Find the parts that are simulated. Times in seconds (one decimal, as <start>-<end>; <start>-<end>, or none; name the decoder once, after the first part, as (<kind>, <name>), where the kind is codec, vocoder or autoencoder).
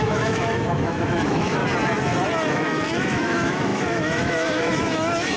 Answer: 0.0-1.6 (autoencoder, DAC-VAE); 2.5-5.4